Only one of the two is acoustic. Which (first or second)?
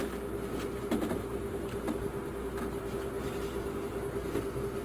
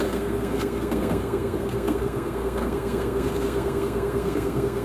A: first